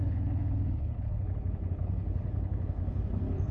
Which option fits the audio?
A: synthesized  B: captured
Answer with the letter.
A